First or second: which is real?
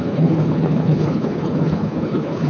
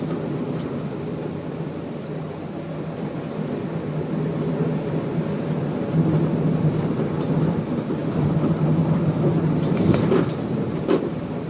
second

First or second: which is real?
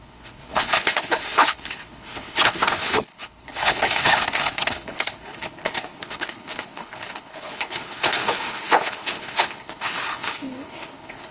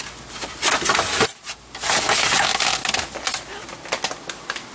second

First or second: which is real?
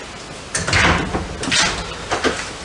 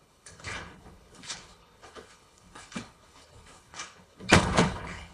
first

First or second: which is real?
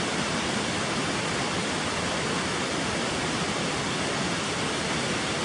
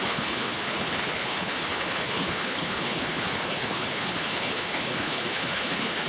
first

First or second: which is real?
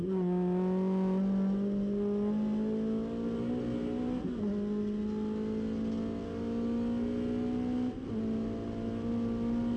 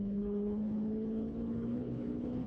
first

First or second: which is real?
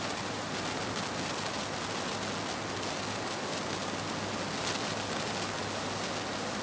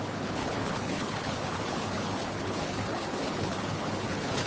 first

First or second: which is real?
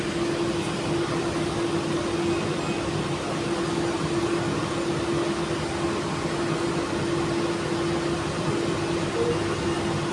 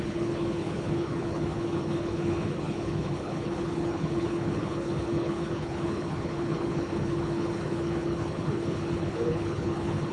first